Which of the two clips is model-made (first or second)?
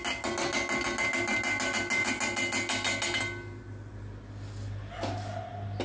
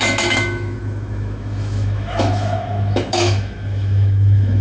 second